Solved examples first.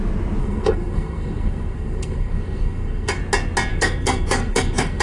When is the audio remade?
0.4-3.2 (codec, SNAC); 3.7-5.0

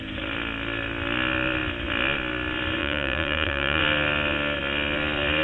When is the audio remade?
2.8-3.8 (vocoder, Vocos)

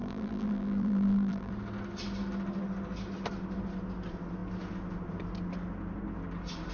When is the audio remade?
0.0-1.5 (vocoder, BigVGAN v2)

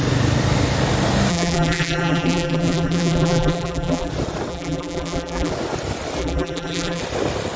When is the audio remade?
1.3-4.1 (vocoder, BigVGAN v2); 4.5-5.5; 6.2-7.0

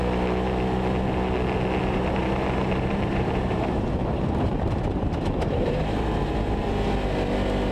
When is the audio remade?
1.8-6.3 (vocoder, BigVGAN v2)